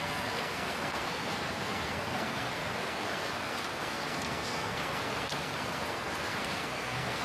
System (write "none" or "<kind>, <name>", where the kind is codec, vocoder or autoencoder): codec, SNAC